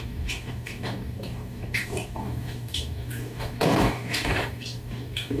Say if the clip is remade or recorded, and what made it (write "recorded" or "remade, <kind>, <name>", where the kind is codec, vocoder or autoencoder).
remade, codec, DAC